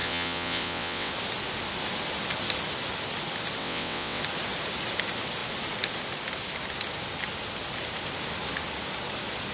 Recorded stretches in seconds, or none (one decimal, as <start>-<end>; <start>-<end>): 1.1-3.6; 4.2-9.5